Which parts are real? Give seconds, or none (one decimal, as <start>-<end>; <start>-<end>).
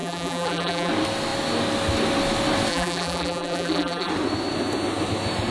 0.9-2.7; 4.1-5.5